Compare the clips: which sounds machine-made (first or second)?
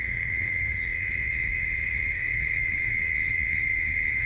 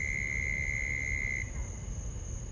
first